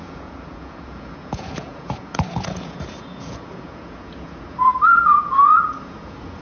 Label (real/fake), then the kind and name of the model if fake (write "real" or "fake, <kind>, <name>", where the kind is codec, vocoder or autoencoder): fake, vocoder, Vocos